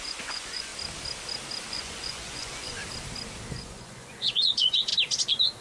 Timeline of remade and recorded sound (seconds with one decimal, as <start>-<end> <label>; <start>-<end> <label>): 0.0-0.7 remade; 0.7-1.7 recorded; 1.7-2.8 remade; 2.8-3.5 recorded; 3.5-4.9 remade; 4.9-5.6 recorded